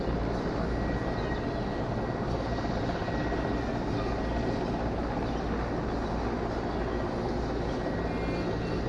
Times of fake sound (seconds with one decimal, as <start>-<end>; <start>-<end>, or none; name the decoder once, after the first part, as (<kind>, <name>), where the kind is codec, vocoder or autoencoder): none